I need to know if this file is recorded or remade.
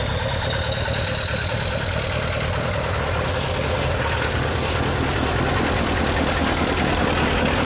recorded